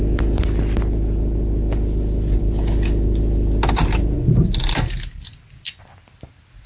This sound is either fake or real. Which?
real